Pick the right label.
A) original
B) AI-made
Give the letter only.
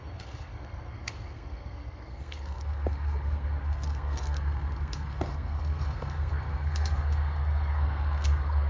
B